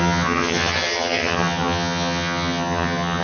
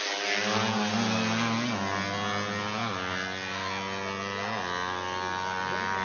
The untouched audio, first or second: second